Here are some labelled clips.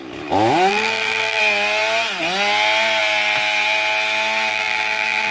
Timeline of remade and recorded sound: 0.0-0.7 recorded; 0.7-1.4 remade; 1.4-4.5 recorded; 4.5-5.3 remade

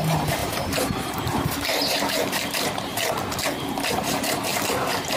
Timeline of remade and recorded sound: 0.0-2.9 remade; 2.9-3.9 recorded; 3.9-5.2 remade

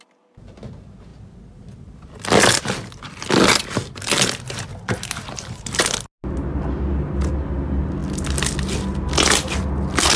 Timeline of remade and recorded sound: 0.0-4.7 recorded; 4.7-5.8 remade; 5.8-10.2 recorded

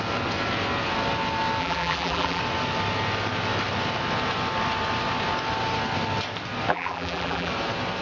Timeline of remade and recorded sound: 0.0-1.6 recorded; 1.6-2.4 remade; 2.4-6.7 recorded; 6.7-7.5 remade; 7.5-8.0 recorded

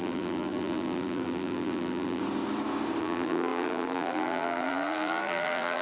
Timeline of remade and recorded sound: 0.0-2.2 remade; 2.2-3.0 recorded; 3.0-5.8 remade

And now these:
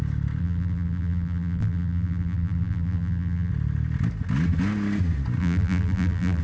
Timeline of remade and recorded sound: 0.0-0.4 recorded; 0.4-3.5 remade; 3.5-5.4 recorded; 5.4-6.4 remade

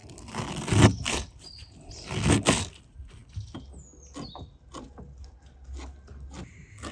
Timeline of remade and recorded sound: 0.0-6.9 recorded

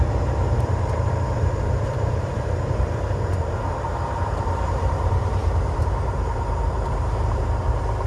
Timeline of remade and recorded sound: 0.0-8.1 remade